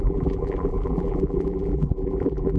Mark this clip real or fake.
fake